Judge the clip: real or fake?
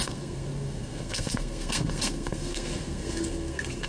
fake